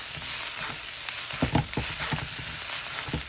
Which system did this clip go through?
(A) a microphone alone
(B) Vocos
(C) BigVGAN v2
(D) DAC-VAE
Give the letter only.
A